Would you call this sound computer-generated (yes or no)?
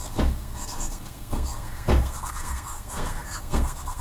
yes